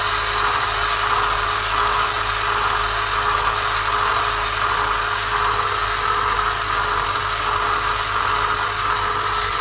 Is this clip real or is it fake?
real